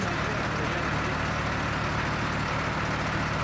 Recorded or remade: recorded